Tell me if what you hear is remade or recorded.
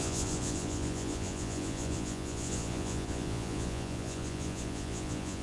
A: remade